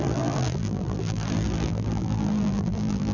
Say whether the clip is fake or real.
fake